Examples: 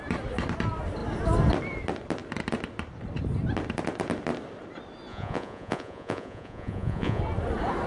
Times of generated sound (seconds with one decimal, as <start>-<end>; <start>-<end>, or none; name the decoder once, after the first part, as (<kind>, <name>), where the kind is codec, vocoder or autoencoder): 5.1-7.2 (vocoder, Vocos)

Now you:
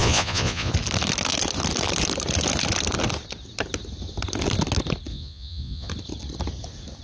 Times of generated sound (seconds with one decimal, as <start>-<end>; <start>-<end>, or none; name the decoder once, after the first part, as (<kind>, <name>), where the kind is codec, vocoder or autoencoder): 0.0-0.7 (vocoder, Vocos); 5.1-5.9

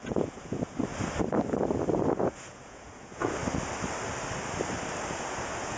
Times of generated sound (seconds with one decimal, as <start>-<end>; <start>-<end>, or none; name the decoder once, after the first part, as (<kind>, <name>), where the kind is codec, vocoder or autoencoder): 0.0-0.8 (vocoder, Vocos); 1.9-3.4; 5.1-5.8